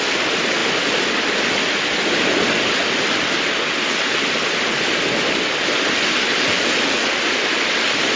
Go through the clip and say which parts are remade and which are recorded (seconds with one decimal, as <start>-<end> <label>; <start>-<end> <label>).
0.0-8.2 recorded